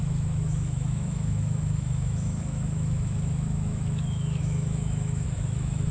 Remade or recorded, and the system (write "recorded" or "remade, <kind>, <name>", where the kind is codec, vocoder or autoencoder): remade, autoencoder, DAC-VAE